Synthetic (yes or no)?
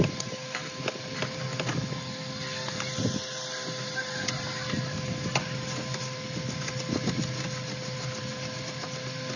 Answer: no